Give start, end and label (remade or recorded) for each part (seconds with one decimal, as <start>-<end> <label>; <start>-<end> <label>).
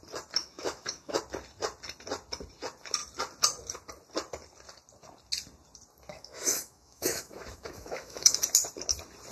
0.0-0.4 recorded; 0.4-1.2 remade; 1.2-6.1 recorded; 6.1-8.4 remade; 8.4-9.3 recorded